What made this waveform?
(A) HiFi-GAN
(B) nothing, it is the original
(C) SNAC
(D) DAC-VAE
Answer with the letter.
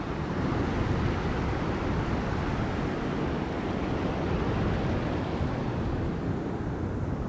B